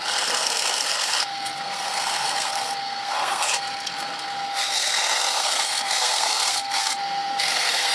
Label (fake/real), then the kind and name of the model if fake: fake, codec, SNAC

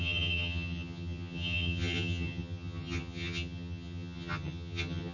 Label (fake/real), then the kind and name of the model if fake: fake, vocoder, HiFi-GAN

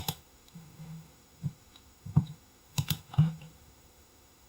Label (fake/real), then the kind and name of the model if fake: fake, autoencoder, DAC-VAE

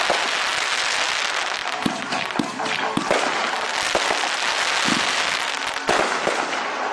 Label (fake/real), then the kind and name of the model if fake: real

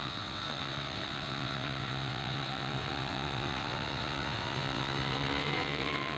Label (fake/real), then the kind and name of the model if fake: fake, vocoder, WaveNeXt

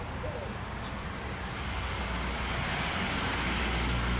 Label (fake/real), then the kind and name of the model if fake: real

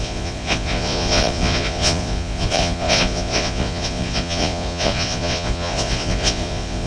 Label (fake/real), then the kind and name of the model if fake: fake, vocoder, Vocos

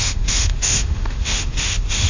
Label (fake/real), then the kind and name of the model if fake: fake, autoencoder, DAC-VAE